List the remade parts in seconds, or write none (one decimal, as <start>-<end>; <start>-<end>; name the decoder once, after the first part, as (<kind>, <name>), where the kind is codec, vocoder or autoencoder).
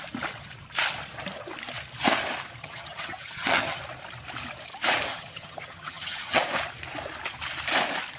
2.6-3.8 (vocoder, HiFi-GAN); 5.1-6.4